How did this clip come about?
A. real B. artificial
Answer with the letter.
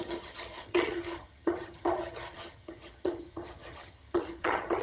B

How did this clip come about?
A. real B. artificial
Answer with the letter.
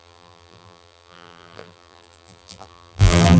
B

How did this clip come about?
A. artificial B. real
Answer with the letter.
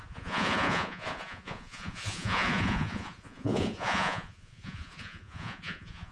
A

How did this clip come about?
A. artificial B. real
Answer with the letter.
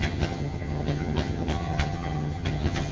A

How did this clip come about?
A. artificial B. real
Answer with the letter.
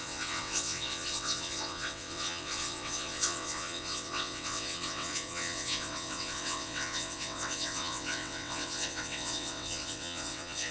A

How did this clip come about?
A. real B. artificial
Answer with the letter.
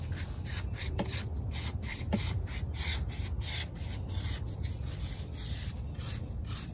B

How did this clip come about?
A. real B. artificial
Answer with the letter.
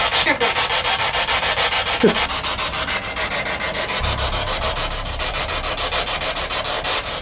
B